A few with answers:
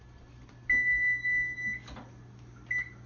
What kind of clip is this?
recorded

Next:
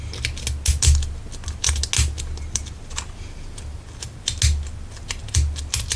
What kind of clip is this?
recorded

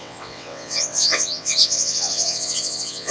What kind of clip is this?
remade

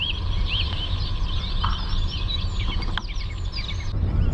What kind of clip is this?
recorded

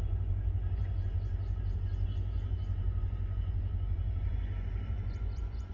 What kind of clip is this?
remade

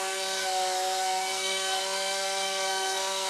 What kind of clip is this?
remade